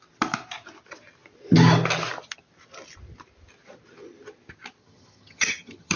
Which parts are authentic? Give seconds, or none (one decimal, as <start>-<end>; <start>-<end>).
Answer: 0.0-4.8